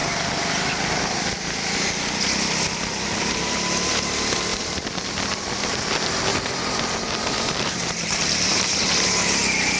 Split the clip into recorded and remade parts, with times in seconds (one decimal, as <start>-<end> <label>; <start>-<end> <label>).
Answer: 0.0-4.5 recorded; 4.5-5.0 remade; 5.0-6.3 recorded; 6.3-8.7 remade; 8.7-9.8 recorded